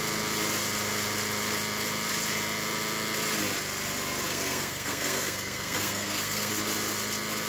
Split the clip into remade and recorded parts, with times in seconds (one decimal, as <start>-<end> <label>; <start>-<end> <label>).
0.0-4.3 recorded; 4.3-6.5 remade; 6.5-7.5 recorded